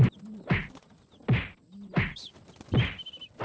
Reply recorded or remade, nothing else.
recorded